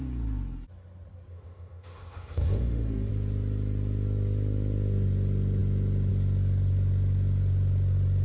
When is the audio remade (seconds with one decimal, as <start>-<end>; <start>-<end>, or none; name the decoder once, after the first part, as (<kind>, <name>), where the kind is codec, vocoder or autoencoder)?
1.3-3.1 (autoencoder, DAC-VAE)